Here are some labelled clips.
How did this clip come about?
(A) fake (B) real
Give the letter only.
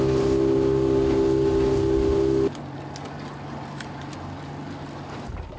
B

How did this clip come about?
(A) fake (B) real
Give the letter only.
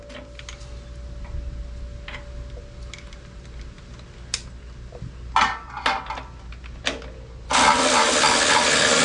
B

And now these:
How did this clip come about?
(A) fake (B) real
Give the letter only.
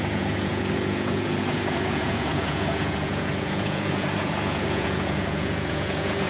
A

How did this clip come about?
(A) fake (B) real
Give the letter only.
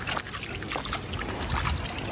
B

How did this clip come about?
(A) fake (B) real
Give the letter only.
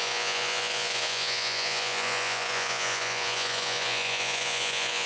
A